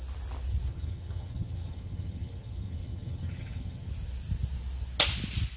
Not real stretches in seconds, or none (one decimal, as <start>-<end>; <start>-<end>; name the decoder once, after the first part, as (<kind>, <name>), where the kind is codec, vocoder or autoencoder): 0.7-3.9 (vocoder, HiFi-GAN)